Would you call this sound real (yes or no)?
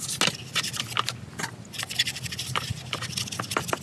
yes